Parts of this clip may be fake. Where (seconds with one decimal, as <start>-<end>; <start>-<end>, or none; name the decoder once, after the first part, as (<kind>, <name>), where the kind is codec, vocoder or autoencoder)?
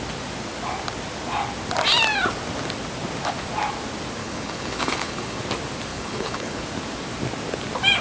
4.2-5.4 (codec, HILCodec); 5.9-6.6